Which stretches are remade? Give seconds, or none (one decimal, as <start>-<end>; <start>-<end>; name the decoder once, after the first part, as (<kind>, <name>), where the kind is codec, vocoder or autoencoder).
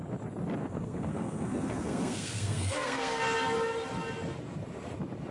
0.6-3.2 (codec, SNAC)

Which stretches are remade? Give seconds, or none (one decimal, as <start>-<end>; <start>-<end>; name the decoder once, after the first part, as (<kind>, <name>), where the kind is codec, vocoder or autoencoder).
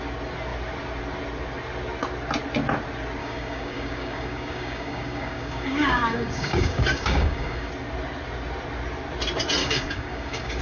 3.2-7.7 (codec, DAC); 9.6-10.6